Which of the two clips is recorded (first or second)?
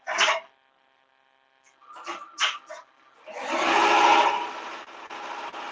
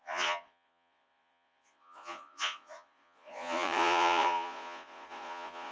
first